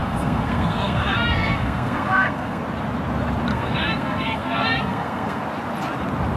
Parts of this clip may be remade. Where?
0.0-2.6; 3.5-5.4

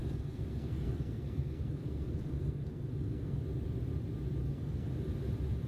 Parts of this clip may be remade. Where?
0.0-3.4; 4.4-4.9

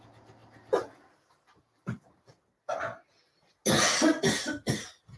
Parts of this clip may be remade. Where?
none

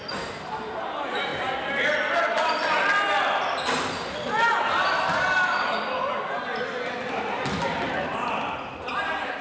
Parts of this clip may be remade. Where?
none

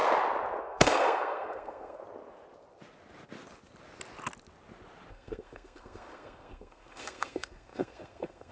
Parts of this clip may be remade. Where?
0.6-2.0; 5.1-8.5

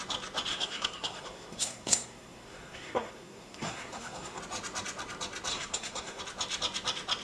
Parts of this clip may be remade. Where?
0.5-4.4; 5.5-6.2

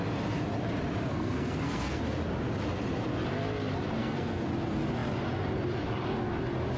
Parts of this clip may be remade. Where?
1.1-2.0; 4.0-4.5